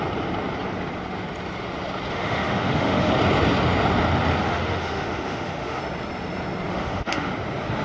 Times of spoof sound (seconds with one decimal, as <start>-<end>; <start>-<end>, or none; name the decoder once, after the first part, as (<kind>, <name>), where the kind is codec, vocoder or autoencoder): 2.1-3.1 (autoencoder, DAC-VAE); 4.4-5.8; 6.7-7.3